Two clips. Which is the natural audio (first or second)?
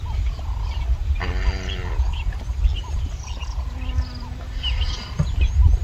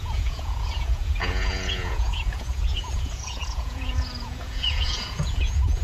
first